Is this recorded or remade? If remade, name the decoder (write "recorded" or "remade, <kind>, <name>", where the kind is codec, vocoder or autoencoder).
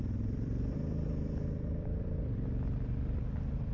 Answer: remade, vocoder, BigVGAN v2